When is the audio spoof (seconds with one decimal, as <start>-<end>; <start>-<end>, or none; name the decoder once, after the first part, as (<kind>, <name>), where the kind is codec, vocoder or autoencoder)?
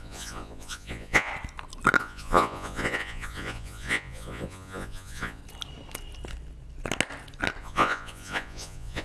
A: 0.0-1.3 (vocoder, Vocos); 2.0-5.4; 7.6-9.0